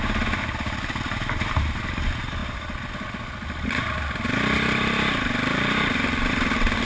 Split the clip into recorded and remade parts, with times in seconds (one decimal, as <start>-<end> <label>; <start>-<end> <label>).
0.0-6.8 recorded